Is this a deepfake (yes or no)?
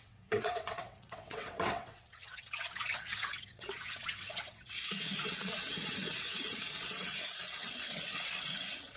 yes